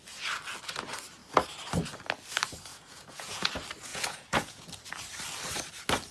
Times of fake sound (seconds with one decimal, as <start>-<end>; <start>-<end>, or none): 2.7-3.5; 3.9-4.7